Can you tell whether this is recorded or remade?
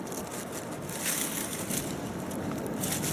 recorded